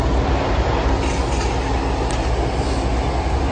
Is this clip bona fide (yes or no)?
yes